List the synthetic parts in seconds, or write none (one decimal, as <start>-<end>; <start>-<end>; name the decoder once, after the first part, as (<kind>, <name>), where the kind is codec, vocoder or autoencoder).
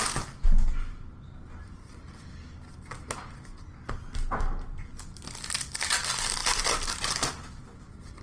none